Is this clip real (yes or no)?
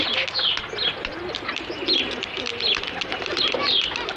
yes